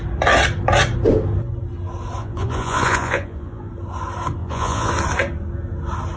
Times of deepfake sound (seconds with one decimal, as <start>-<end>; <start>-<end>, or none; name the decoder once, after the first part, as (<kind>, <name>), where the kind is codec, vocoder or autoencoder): 2.2-3.7 (vocoder, Vocos); 4.4-4.9